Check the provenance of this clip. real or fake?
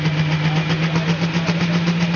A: real